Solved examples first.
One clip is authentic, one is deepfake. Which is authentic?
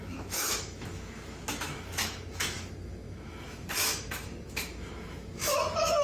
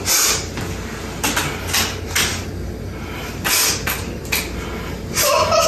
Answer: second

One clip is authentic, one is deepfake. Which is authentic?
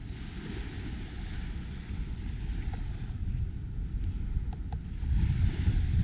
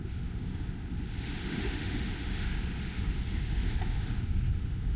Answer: first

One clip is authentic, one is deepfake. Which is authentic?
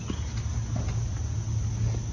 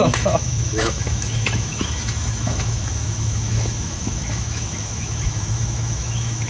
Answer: first